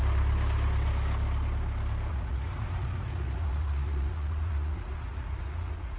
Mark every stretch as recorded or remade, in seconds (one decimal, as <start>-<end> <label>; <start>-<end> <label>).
0.0-2.1 recorded; 2.1-6.0 remade